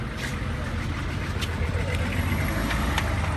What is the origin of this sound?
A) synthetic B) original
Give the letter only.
B